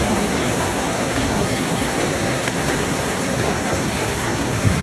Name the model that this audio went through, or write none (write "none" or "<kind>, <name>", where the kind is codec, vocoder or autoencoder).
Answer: codec, SNAC